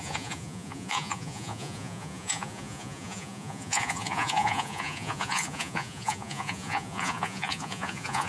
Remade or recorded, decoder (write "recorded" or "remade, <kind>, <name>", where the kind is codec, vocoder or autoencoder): remade, vocoder, Vocos